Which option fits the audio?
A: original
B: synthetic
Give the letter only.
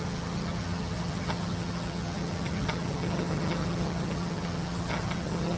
B